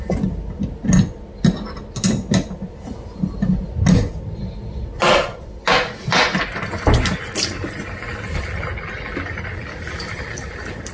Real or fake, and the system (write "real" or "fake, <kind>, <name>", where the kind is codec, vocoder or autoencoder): real